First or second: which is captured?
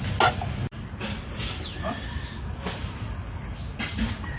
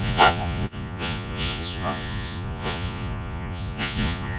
first